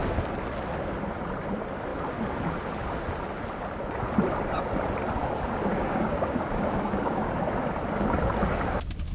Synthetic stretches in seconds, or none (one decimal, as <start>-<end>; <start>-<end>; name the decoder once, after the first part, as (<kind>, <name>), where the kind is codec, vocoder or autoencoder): 5.7-7.3 (codec, DAC)